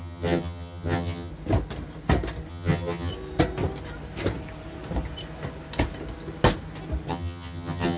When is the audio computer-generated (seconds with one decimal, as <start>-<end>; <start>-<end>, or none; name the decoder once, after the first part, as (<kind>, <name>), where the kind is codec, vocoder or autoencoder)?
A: 0.0-1.3 (vocoder, HiFi-GAN); 2.5-3.1; 7.1-8.0